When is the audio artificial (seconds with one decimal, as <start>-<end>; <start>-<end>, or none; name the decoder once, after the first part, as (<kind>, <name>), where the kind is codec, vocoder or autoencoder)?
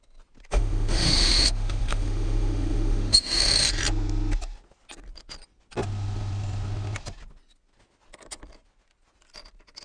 0.5-3.4 (autoencoder, DAC-VAE)